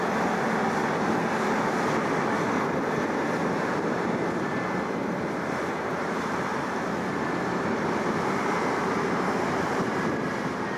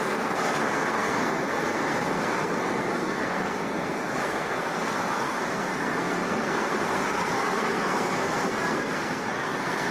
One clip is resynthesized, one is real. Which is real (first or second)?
first